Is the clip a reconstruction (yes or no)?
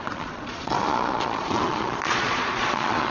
yes